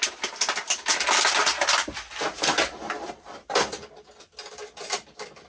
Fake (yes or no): no